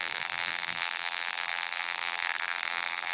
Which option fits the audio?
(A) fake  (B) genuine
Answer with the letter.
A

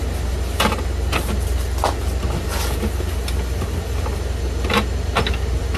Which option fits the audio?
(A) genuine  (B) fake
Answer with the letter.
A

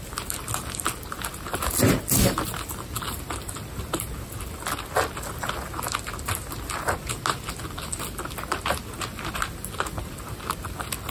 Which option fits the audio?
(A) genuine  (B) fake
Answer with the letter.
A